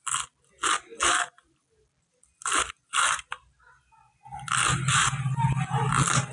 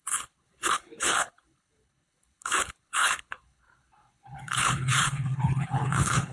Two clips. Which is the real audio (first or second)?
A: first